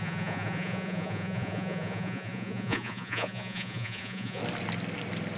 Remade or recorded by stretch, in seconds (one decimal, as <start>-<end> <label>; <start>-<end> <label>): 0.0-4.4 remade; 4.4-5.4 recorded